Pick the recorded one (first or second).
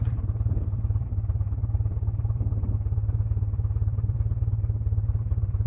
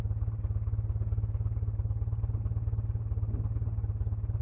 second